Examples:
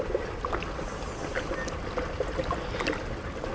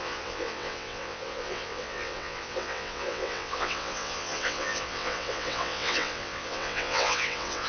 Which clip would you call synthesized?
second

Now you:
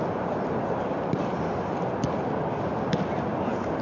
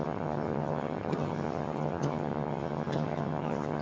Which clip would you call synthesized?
second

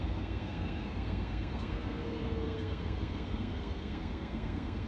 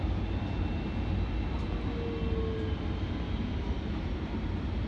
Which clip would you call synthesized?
first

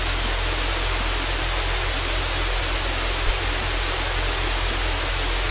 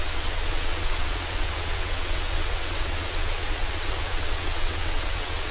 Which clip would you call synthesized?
second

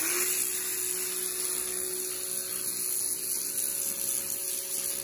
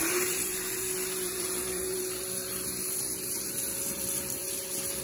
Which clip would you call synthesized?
second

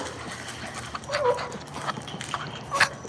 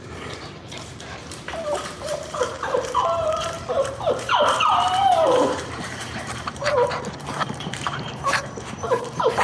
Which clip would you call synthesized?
second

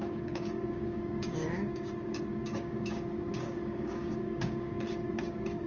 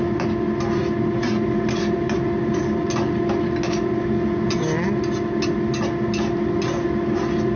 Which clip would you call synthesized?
first